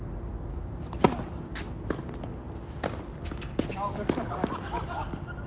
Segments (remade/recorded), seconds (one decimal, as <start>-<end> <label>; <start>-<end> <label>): 0.0-3.7 recorded; 3.7-5.0 remade; 5.0-5.5 recorded